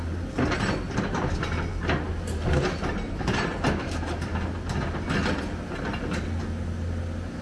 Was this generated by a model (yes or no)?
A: no